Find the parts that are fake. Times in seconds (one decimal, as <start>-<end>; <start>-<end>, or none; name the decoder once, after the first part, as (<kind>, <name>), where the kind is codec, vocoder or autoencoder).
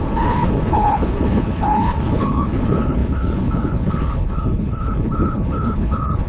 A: 0.0-6.3 (codec, HILCodec)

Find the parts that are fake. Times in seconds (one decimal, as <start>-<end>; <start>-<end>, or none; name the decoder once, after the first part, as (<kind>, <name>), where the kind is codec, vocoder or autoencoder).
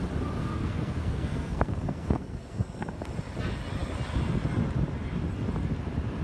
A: 0.4-3.0 (codec, SNAC)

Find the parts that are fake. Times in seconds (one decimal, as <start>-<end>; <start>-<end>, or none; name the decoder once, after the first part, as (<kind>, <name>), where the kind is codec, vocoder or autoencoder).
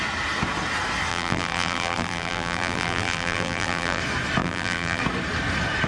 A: 1.1-4.0 (vocoder, BigVGAN v2); 4.4-5.0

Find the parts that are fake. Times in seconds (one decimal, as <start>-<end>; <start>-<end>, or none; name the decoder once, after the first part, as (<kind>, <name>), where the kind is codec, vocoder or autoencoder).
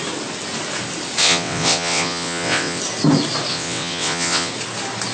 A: 1.2-2.8 (vocoder, WaveNeXt); 3.5-4.5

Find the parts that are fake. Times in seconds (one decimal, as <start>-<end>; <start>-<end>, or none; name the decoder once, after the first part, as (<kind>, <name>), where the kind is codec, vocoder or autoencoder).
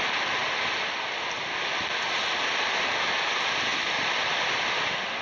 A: none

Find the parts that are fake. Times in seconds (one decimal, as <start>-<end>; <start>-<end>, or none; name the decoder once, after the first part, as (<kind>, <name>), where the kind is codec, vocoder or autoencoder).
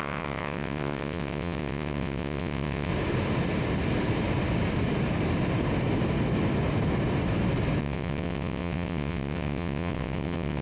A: 0.0-2.9 (vocoder, WaveNeXt); 7.8-10.6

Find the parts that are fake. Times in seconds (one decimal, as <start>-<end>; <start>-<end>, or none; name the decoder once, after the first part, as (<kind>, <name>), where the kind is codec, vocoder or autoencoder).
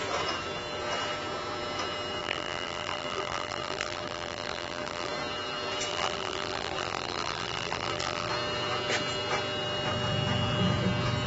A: 2.2-5.1 (vocoder, BigVGAN v2); 5.9-8.3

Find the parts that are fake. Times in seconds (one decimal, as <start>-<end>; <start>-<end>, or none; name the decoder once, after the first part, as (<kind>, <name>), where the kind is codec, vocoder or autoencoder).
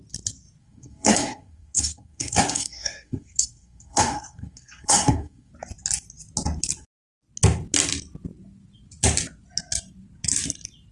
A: 0.6-5.5 (codec, SNAC)